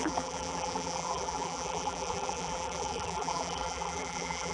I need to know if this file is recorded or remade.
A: remade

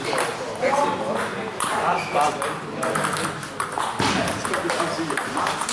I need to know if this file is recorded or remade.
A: recorded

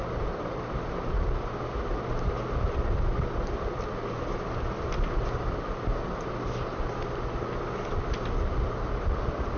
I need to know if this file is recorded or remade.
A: recorded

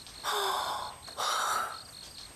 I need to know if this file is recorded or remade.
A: recorded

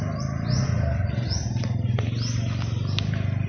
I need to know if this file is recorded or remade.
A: recorded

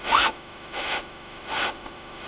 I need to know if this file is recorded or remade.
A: remade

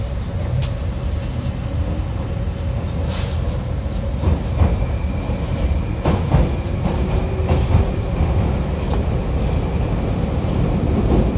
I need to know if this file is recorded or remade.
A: recorded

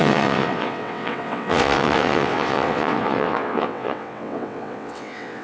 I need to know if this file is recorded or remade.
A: remade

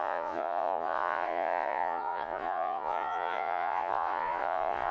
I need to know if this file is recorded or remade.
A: remade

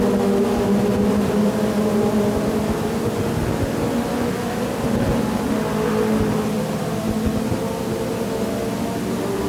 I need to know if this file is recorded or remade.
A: recorded